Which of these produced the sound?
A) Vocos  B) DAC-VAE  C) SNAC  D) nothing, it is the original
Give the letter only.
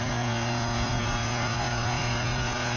A